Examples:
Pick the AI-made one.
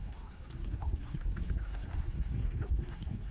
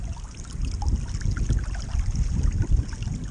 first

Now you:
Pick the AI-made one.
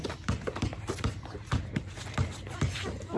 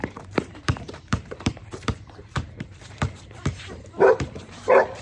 second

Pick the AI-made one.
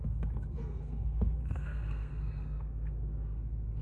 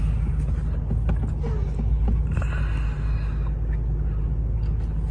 first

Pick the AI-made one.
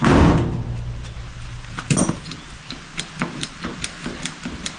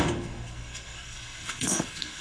second